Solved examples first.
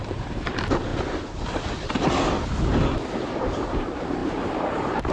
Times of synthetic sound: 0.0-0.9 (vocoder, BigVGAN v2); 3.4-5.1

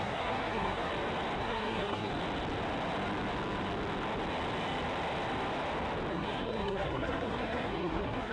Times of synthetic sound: 0.0-0.9 (codec, SNAC); 1.4-2.1; 6.1-8.3

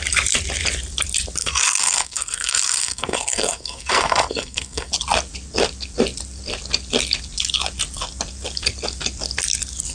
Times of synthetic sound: 1.4-4.9 (codec, SNAC)